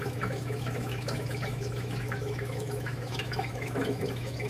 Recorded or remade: remade